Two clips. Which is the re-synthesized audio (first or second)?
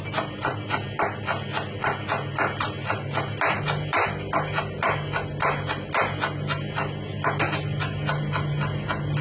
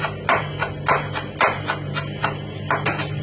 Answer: second